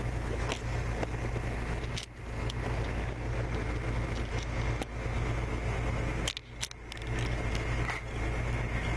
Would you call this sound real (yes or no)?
yes